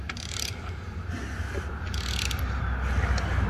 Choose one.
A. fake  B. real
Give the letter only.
B